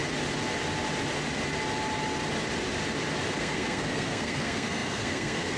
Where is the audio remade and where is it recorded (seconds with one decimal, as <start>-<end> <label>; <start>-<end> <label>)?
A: 0.0-3.4 recorded; 3.4-5.6 remade